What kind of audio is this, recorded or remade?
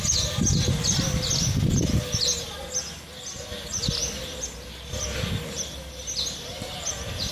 recorded